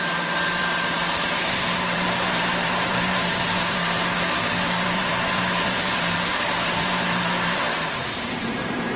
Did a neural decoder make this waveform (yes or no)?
yes